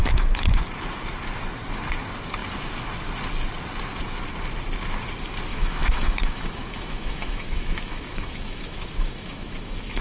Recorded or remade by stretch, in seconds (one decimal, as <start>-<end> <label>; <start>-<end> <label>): 0.0-0.6 remade; 0.6-5.5 recorded; 5.5-10.0 remade